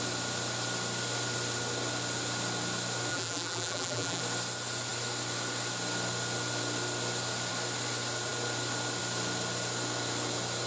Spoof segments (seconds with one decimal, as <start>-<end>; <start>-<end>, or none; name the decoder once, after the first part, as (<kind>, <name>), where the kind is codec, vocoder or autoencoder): 3.1-4.2 (vocoder, BigVGAN v2)